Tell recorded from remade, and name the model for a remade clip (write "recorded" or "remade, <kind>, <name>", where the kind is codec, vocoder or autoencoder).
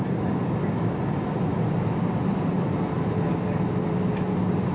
recorded